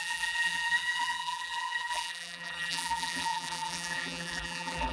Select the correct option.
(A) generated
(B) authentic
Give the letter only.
A